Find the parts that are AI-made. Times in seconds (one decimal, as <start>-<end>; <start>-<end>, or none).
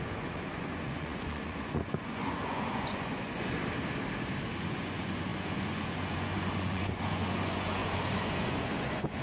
0.0-3.6; 4.6-9.2